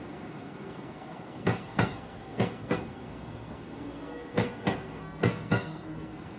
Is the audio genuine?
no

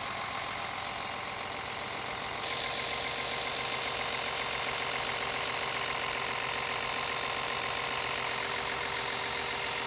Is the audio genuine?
yes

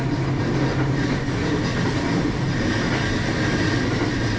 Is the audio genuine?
yes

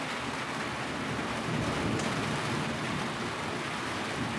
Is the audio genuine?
yes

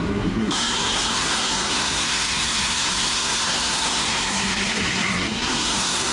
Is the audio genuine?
no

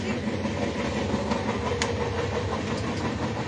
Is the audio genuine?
yes